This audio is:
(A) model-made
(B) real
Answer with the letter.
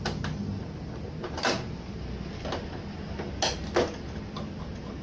B